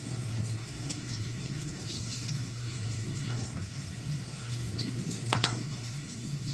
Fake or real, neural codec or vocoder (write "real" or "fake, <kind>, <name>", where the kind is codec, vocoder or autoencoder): fake, codec, SNAC